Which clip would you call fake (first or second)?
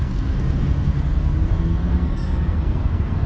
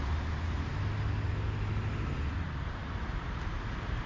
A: first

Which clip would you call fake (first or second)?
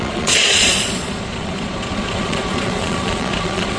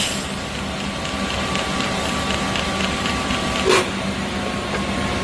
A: first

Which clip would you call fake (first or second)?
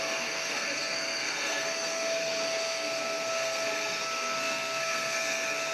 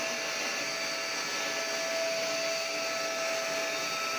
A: first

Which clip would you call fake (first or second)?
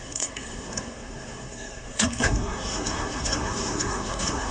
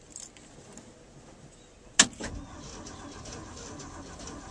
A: first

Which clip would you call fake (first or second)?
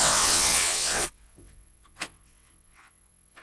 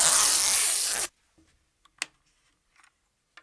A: first